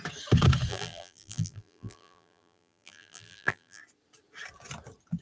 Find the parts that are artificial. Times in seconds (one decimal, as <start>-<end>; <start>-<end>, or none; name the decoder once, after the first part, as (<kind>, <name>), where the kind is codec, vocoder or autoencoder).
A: 0.7-3.8 (vocoder, BigVGAN v2)